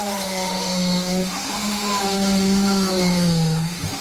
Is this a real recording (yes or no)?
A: no